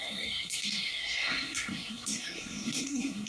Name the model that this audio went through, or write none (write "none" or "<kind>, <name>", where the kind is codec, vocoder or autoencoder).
codec, SNAC